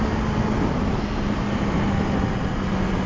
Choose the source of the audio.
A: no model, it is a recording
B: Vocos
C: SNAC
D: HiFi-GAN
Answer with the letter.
A